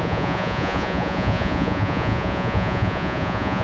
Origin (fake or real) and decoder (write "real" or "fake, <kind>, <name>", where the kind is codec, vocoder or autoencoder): fake, vocoder, Vocos